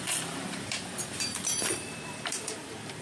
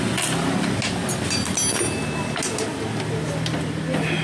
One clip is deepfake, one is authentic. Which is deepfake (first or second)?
first